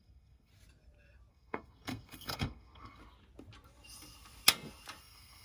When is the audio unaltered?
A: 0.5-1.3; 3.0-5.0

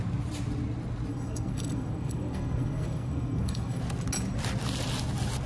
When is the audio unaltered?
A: 0.0-1.1; 3.8-5.5

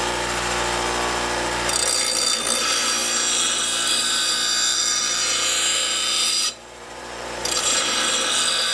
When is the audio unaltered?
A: 0.0-4.7; 7.9-8.7

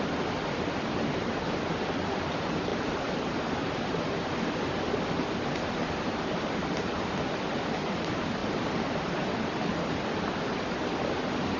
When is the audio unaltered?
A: 0.0-2.7; 6.9-8.4; 9.7-11.6

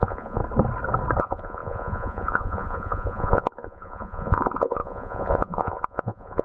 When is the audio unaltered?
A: 0.4-1.2

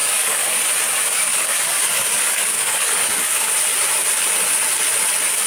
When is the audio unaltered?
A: 0.6-1.0; 3.5-5.5

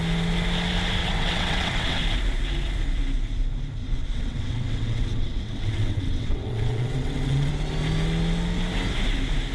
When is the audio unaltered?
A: 0.0-1.0; 2.0-3.8; 7.5-9.5

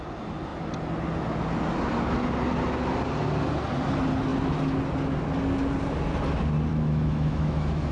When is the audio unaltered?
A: 0.0-6.7